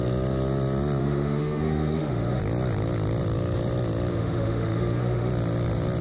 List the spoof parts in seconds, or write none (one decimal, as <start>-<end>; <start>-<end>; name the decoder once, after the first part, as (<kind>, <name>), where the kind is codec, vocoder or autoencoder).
1.0-2.4 (autoencoder, DAC-VAE); 4.1-5.3